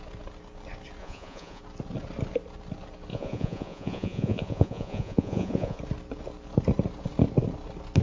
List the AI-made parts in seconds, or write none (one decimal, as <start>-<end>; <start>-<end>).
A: 1.0-1.6; 3.1-5.8